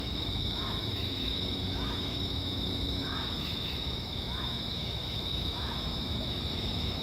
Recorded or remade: remade